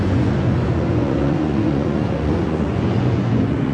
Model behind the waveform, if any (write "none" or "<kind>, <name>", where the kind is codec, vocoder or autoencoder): vocoder, Vocos